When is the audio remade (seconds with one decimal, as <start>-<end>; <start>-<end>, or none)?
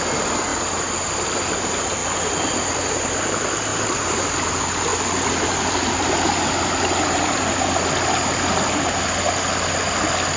none